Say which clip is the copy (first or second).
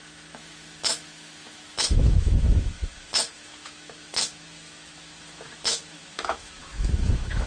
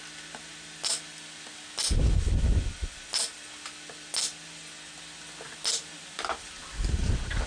first